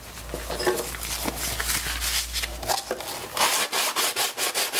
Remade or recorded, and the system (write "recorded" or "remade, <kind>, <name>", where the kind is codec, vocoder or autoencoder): recorded